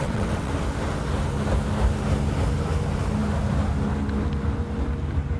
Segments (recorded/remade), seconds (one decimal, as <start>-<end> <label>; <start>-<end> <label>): 0.0-0.5 remade; 0.5-5.4 recorded